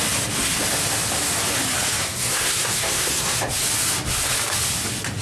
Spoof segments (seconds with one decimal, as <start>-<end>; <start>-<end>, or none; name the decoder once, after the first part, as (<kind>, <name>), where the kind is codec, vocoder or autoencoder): 2.0-3.4 (codec, SNAC)